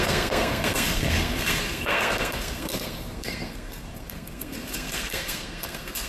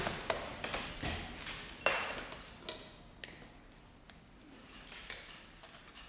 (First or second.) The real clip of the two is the second